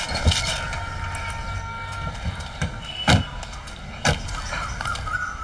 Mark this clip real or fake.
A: real